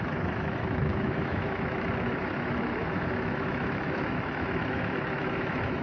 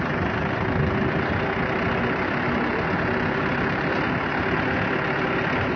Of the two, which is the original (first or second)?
second